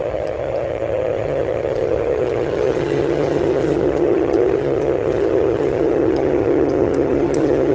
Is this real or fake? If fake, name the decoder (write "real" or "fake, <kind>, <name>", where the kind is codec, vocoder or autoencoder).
fake, vocoder, HiFi-GAN